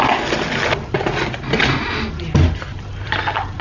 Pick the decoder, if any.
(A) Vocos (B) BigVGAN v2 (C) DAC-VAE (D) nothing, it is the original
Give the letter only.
D